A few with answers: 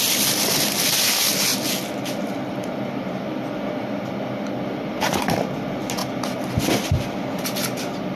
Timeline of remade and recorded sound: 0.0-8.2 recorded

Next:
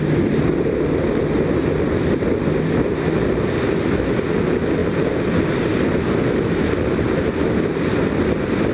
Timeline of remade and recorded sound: 0.0-4.8 recorded; 4.8-5.5 remade; 5.5-8.7 recorded